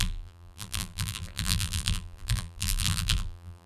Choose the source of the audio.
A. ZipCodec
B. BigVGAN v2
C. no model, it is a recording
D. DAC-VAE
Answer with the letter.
B